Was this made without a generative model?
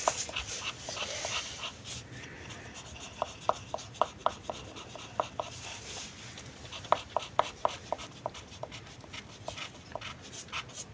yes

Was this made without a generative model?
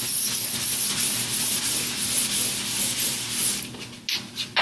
yes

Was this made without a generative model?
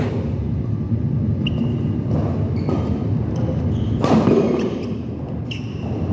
yes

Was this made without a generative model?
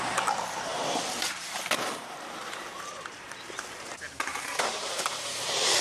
no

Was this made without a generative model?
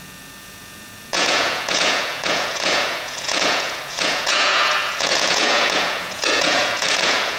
no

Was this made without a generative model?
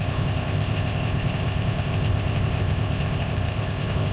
no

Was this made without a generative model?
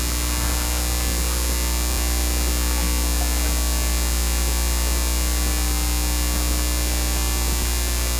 yes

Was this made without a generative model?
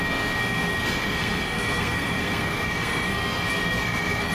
no